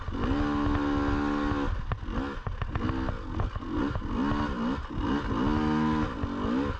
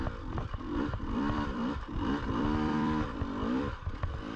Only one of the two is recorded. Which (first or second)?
first